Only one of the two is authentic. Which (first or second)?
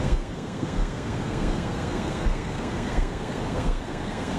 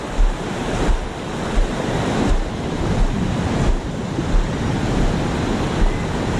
second